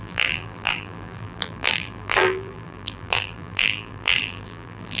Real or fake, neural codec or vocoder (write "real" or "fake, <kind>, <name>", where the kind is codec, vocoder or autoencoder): fake, vocoder, BigVGAN v2